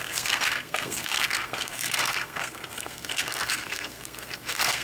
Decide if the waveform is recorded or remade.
remade